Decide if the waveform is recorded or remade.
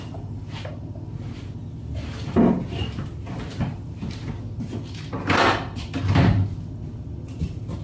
recorded